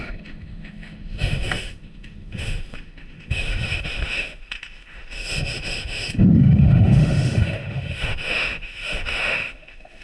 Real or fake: fake